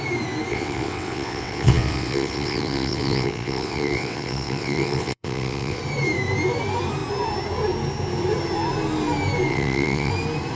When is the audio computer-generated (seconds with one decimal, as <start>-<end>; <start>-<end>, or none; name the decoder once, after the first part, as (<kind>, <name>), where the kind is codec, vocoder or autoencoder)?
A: 0.5-5.8 (vocoder, WaveNeXt); 9.5-10.1